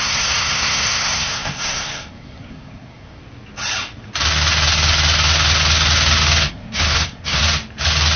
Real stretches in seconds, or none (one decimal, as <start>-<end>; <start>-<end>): 3.2-6.5; 7.4-8.2